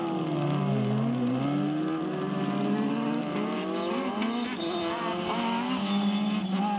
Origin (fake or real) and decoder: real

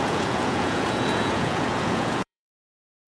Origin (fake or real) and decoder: fake, vocoder, Vocos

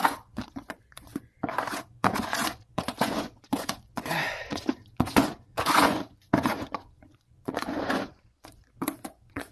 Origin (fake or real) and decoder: fake, vocoder, Vocos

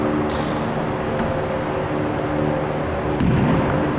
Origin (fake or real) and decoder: real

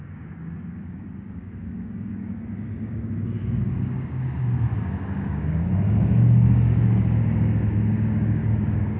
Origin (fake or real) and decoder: fake, codec, DAC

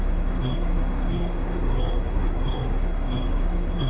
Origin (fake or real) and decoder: fake, codec, SNAC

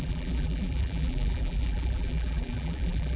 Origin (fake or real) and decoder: fake, vocoder, BigVGAN v2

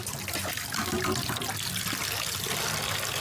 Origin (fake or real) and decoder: real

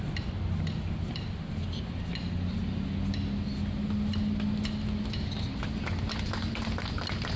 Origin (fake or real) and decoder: real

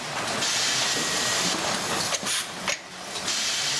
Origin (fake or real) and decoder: real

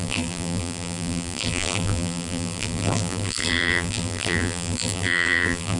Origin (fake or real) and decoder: fake, vocoder, BigVGAN v2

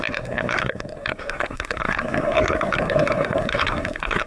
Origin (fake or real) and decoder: fake, codec, SNAC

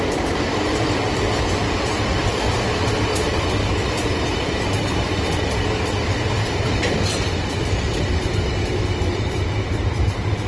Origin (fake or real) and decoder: fake, vocoder, BigVGAN v2